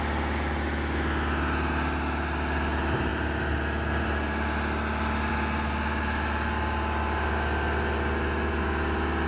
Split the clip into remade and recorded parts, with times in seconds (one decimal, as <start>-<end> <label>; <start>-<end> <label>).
0.0-9.3 recorded

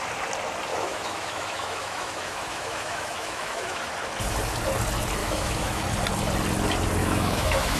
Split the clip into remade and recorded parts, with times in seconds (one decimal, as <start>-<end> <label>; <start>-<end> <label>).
0.0-0.7 recorded; 0.7-3.9 remade; 3.9-5.2 recorded; 5.2-5.8 remade; 5.8-7.0 recorded; 7.0-7.8 remade

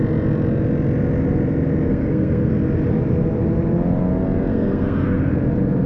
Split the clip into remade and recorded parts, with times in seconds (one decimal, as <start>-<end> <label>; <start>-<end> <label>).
0.0-1.9 recorded; 1.9-2.5 remade; 2.5-4.5 recorded; 4.5-5.3 remade; 5.3-5.9 recorded

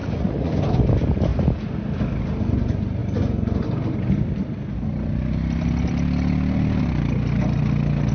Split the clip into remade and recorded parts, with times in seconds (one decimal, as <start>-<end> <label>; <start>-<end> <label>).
0.0-0.5 remade; 0.5-8.1 recorded

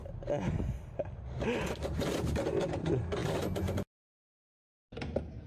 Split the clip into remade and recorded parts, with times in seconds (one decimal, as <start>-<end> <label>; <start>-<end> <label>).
0.0-5.5 recorded